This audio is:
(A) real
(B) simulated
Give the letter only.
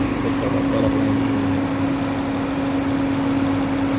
A